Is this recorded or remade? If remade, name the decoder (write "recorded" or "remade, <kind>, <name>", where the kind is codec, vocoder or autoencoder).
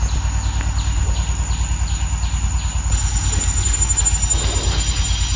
recorded